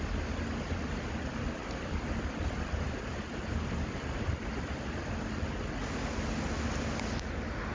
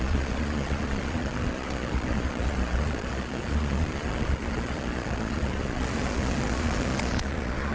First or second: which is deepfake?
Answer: second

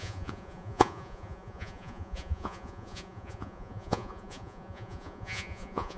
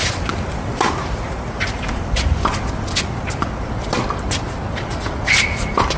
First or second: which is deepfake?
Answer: first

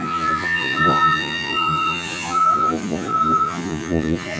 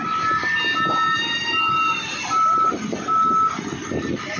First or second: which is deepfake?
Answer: first